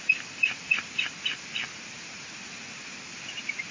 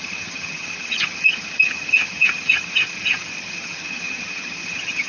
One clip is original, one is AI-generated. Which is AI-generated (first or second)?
second